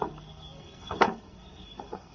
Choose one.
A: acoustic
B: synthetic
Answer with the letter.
B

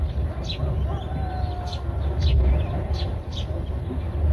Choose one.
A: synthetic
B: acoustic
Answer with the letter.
B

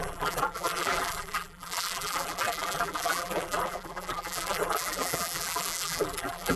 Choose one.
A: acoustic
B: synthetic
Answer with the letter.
B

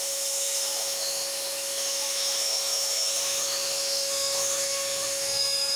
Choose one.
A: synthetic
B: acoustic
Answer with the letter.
A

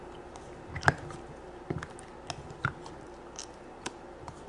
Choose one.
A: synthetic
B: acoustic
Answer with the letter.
B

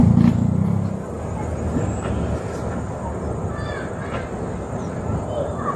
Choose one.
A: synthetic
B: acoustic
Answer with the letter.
B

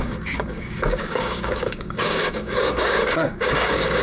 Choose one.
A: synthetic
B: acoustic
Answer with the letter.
A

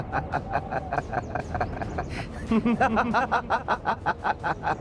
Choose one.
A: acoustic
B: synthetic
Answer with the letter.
A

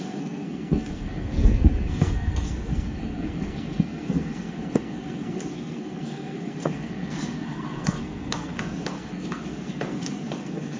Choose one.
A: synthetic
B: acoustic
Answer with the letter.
A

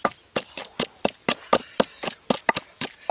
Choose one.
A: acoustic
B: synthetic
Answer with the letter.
A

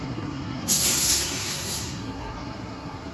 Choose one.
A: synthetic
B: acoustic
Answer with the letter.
A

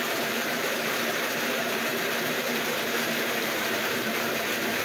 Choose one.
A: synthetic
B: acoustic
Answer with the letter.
A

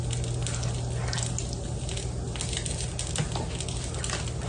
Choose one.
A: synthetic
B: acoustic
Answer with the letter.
B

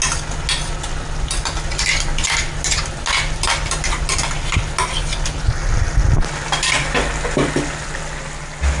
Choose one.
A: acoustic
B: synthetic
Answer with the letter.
A